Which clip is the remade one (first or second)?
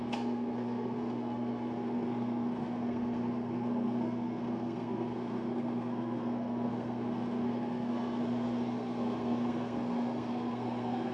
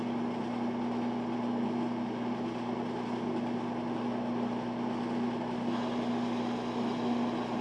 first